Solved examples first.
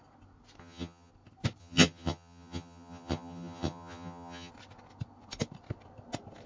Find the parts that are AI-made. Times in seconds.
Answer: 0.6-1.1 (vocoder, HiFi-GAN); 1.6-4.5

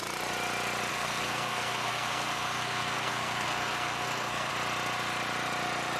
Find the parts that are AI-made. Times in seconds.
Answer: 0.9-4.5 (codec, SNAC)

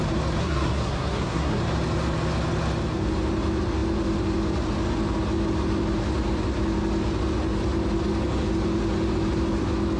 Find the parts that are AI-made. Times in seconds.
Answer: 0.4-1.6 (codec, SNAC)

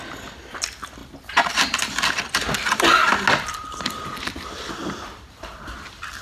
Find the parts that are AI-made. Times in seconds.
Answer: none

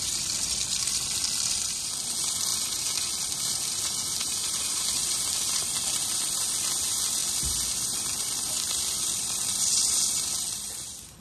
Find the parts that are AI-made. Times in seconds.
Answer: 4.2-5.6 (vocoder, BigVGAN v2)

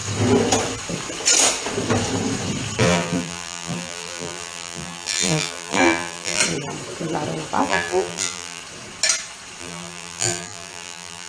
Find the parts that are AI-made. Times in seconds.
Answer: 2.8-6.4 (vocoder, BigVGAN v2); 7.6-8.6; 9.6-11.3

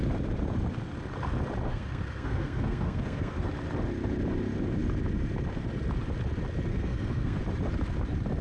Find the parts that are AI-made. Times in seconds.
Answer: 1.7-3.5 (codec, SNAC); 6.7-7.4